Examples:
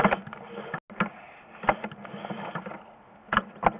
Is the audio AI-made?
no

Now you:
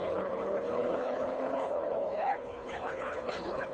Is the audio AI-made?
yes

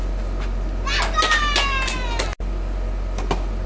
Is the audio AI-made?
no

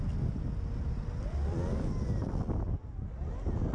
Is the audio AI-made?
no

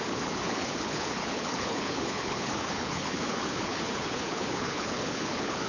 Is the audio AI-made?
yes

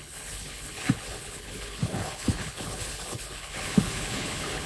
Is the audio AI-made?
yes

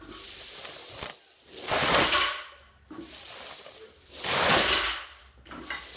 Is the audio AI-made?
no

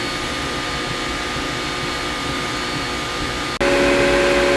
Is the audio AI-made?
no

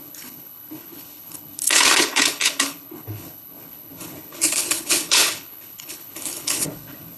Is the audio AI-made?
yes